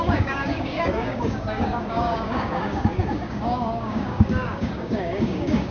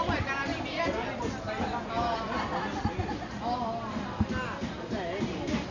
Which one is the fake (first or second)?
first